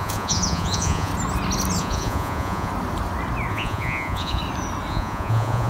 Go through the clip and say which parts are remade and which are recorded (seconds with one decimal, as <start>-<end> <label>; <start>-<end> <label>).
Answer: 0.0-1.1 remade; 1.1-1.8 recorded; 1.8-2.7 remade; 2.7-3.5 recorded; 3.5-4.4 remade; 4.4-4.9 recorded; 4.9-5.7 remade